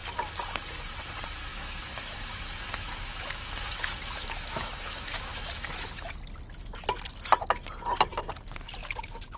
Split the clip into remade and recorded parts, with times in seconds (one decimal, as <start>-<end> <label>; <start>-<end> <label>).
0.0-1.5 recorded; 1.5-6.0 remade; 6.0-9.4 recorded